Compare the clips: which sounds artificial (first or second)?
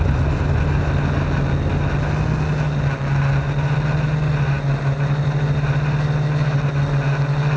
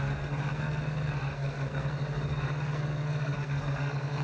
second